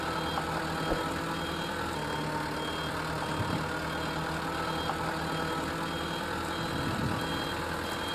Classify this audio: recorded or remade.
recorded